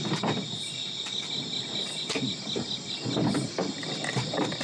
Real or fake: real